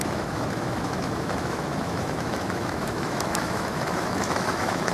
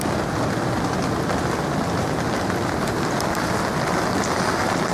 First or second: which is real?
second